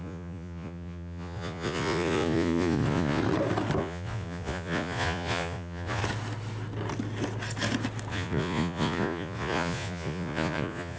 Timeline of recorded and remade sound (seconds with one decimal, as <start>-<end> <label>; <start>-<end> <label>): 0.0-3.2 remade; 3.2-3.8 recorded; 3.8-6.0 remade; 6.0-8.1 recorded; 8.1-11.0 remade